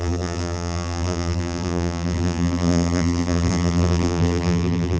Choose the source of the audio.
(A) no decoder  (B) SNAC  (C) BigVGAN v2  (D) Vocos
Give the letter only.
C